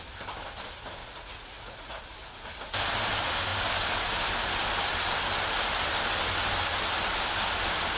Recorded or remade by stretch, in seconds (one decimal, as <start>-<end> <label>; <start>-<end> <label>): 0.0-1.0 recorded; 1.0-2.0 remade; 2.0-8.0 recorded